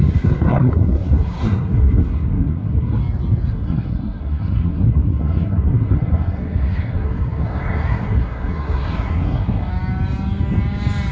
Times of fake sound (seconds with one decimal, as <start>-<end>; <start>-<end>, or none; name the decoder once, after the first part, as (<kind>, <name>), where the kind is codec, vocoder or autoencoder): 0.0-3.0 (codec, SNAC); 3.5-9.7